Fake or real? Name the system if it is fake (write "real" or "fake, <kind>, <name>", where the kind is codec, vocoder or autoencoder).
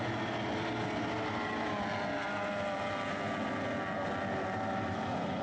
real